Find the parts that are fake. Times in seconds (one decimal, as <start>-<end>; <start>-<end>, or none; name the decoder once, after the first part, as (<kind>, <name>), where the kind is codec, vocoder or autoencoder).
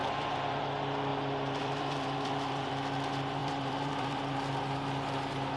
0.0-0.6 (vocoder, BigVGAN v2); 1.1-2.7; 3.4-4.6